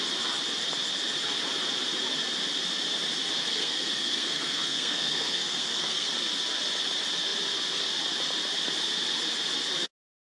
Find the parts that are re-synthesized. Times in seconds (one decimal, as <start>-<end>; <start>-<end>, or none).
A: 3.4-6.1